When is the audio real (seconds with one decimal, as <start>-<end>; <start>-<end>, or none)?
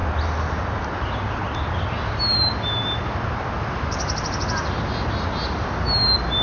0.0-6.4